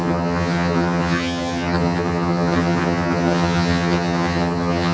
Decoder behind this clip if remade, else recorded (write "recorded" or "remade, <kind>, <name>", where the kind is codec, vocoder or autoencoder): remade, vocoder, HiFi-GAN